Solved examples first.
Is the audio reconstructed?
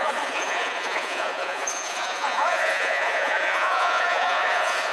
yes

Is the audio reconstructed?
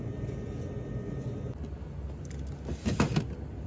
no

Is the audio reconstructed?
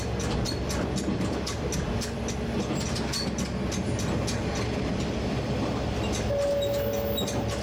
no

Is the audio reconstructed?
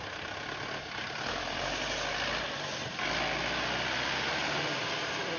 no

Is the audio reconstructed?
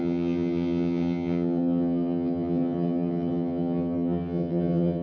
yes